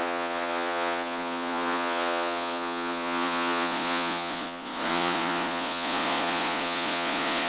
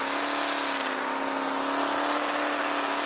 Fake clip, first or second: first